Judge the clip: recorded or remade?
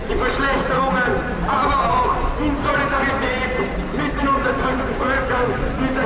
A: recorded